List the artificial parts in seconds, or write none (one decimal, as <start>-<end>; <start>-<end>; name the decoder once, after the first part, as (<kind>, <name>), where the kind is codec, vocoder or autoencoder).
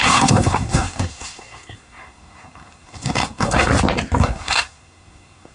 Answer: 0.0-3.7 (codec, SNAC); 4.2-5.5